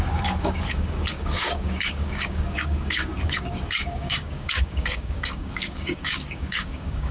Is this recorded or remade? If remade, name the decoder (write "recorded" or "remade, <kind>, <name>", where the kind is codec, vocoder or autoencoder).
remade, codec, DAC